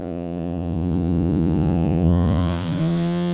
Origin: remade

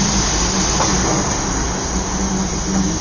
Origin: recorded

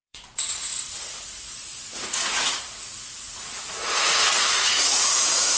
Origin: remade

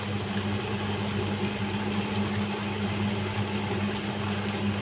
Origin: recorded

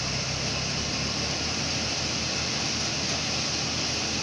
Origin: recorded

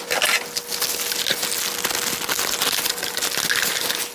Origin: recorded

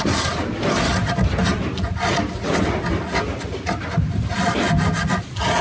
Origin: recorded